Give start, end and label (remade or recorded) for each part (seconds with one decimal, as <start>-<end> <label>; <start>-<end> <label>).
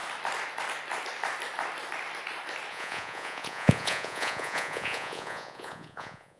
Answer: 0.0-2.7 recorded; 2.7-6.4 remade